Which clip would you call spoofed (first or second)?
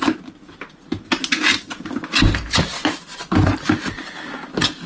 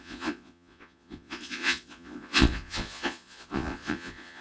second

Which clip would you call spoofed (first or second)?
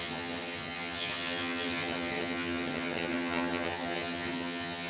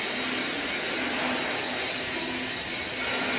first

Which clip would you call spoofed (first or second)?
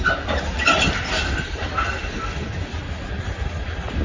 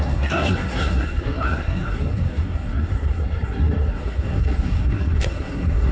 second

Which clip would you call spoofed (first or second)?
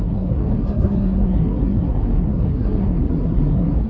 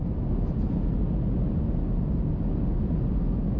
first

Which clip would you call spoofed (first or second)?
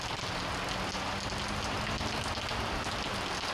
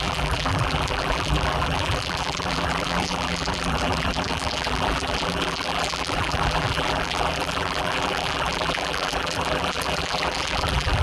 second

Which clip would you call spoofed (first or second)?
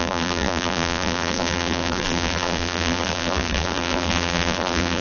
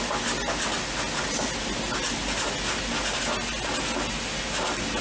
first